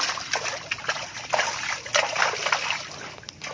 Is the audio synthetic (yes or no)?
no